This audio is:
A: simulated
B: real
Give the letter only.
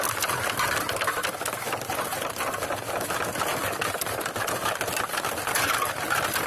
B